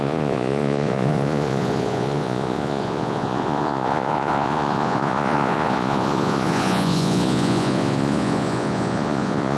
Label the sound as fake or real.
fake